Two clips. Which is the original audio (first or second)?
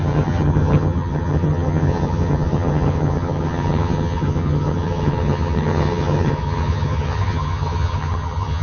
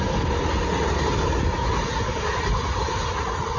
second